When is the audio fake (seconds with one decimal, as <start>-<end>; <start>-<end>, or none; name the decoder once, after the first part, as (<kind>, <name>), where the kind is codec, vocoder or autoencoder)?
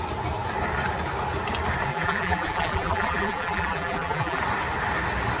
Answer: 1.9-4.4 (vocoder, BigVGAN v2)